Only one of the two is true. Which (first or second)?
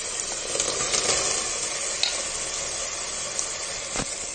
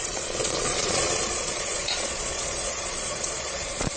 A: first